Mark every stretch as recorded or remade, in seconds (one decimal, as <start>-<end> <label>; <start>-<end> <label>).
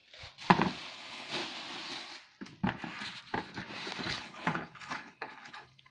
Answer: 0.0-0.9 recorded; 0.9-1.4 remade; 1.4-4.1 recorded; 4.1-5.9 remade